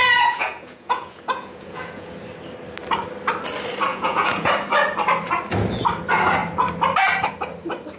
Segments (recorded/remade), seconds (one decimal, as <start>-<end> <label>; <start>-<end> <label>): 0.0-2.1 remade; 2.1-3.9 recorded; 3.9-4.5 remade; 4.5-8.0 recorded

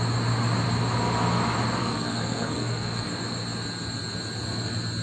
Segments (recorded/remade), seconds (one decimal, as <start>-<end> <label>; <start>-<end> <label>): 0.0-1.8 recorded; 1.8-3.1 remade; 3.1-5.0 recorded

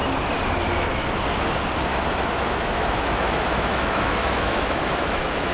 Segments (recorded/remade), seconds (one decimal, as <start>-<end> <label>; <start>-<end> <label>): 0.0-1.9 recorded; 1.9-5.5 remade

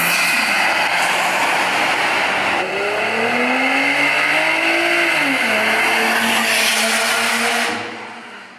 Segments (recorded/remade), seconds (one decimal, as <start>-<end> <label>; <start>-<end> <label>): 0.0-8.6 recorded